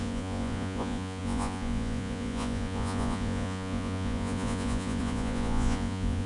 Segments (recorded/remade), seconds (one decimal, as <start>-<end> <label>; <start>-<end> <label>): 0.0-6.3 remade